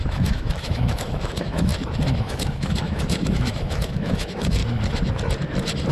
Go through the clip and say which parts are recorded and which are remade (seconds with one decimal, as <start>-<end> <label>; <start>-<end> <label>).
0.0-1.7 remade; 1.7-2.2 recorded; 2.2-4.6 remade; 4.6-5.9 recorded